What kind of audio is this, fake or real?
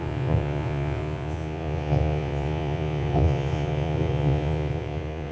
fake